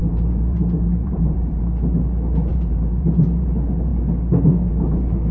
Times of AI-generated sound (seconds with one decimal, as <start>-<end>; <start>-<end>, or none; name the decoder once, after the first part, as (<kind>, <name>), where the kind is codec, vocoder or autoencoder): 0.0-1.6 (vocoder, BigVGAN v2); 2.5-3.5